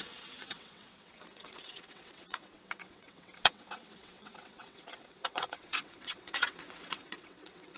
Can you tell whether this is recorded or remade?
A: remade